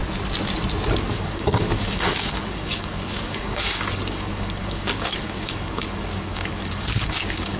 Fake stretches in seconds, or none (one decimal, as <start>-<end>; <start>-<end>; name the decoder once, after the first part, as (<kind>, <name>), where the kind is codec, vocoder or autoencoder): 1.0-7.6 (codec, DAC)